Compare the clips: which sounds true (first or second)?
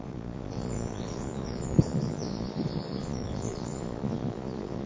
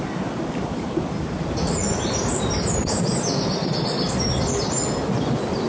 second